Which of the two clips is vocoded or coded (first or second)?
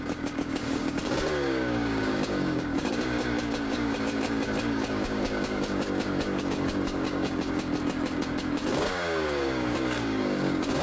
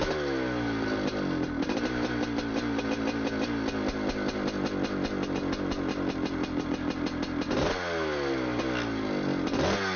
first